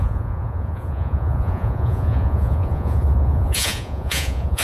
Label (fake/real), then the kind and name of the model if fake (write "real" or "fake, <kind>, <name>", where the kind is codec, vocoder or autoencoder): fake, vocoder, Vocos